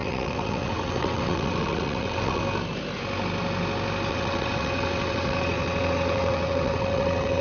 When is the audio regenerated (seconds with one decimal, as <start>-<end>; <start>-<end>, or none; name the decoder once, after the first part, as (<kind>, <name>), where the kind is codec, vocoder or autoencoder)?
0.0-2.4 (vocoder, WaveNeXt); 4.1-7.4